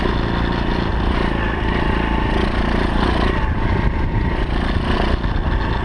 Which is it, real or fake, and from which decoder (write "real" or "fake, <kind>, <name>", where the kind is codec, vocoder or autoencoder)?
real